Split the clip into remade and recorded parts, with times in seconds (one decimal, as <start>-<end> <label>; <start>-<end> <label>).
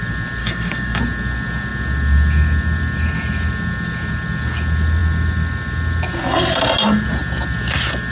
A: 0.0-0.4 recorded; 0.4-1.0 remade; 1.0-8.1 recorded